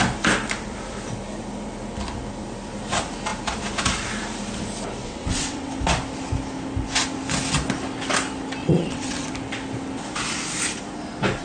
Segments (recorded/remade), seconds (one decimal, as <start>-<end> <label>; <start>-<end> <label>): 0.0-5.0 recorded; 5.0-5.7 remade; 5.7-8.6 recorded; 8.6-9.3 remade; 9.3-11.4 recorded

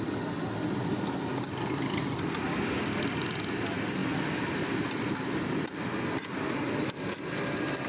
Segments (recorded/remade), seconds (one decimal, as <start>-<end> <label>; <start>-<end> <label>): 0.0-7.9 recorded

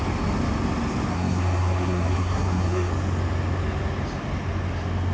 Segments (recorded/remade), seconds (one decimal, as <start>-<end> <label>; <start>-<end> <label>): 0.0-1.1 recorded; 1.1-2.9 remade; 2.9-5.1 recorded

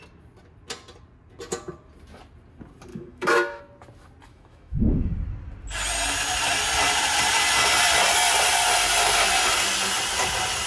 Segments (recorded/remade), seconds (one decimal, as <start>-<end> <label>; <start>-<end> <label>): 0.0-2.9 recorded; 2.9-3.6 remade; 3.6-4.3 recorded; 4.3-5.1 remade; 5.1-10.7 recorded

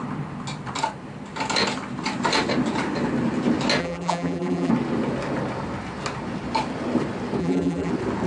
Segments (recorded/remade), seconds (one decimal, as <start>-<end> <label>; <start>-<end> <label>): 0.0-3.8 recorded; 3.8-4.7 remade; 4.7-7.4 recorded; 7.4-7.9 remade; 7.9-8.3 recorded

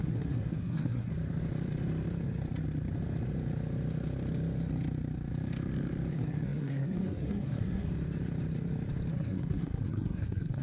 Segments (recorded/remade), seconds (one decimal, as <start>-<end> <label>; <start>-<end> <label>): 0.0-1.1 remade; 1.1-6.1 recorded; 6.1-7.9 remade; 7.9-9.1 recorded; 9.1-10.6 remade